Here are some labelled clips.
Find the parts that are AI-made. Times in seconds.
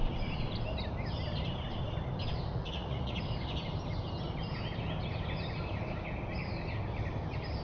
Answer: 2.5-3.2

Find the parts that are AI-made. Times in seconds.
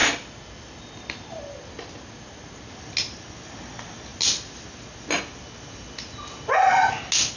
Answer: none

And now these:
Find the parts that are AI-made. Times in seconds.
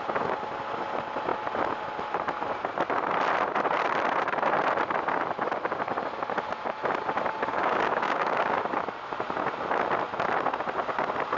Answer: 7.5-8.6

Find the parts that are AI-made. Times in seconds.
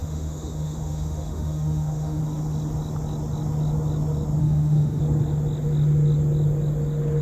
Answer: 0.0-2.2; 4.4-5.0